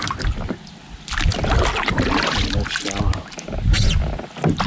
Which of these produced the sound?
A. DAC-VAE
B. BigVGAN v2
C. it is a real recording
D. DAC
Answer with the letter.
C